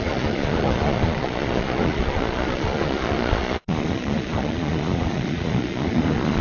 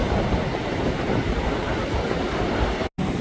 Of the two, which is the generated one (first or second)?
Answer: first